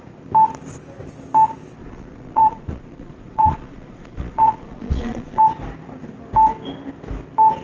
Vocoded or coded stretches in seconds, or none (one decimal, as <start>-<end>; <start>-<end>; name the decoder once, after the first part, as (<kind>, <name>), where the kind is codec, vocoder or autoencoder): 1.8-5.4 (vocoder, Vocos)